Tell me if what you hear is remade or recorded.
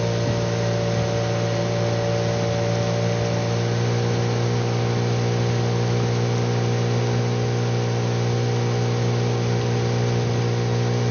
recorded